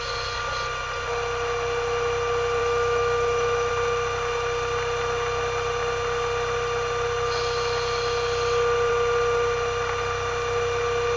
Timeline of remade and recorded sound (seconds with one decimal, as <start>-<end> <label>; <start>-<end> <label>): 0.0-2.6 recorded; 2.6-3.7 remade; 3.7-11.2 recorded